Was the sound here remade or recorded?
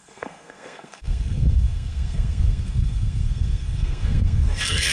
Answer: remade